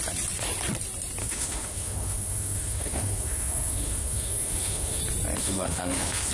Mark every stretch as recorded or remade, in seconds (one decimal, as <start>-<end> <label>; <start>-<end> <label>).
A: 0.0-1.2 recorded; 1.2-5.0 remade; 5.0-5.4 recorded; 5.4-6.3 remade